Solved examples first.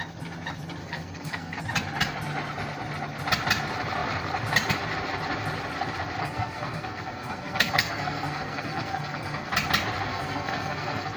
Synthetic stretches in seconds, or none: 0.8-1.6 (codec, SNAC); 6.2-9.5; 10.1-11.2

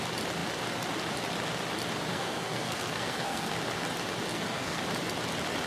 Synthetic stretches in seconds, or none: 2.1-3.5 (codec, SNAC); 4.3-4.8

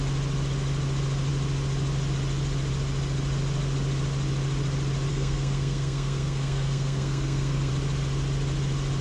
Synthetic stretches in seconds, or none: 5.1-7.7 (codec, SNAC)

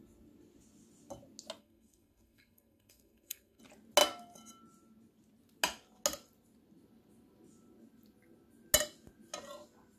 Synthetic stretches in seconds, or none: 1.6-3.6 (codec, SNAC)

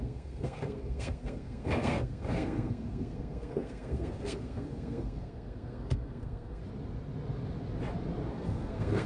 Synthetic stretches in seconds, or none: 0.0-6.6 (codec, SNAC); 8.3-9.1